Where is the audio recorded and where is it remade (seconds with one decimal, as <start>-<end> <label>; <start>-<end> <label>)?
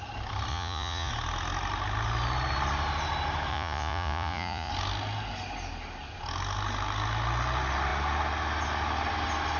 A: 0.0-0.5 recorded; 0.5-1.1 remade; 1.1-3.5 recorded; 3.5-4.7 remade; 4.7-9.6 recorded